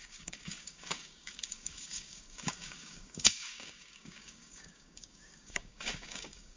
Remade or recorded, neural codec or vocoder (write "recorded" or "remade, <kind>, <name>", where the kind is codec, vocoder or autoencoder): remade, codec, DAC